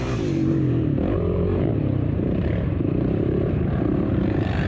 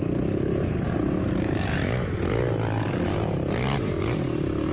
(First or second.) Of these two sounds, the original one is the second